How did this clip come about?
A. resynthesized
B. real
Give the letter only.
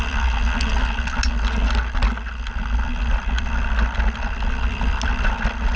B